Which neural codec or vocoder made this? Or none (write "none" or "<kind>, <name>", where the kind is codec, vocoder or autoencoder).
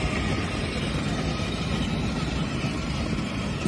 none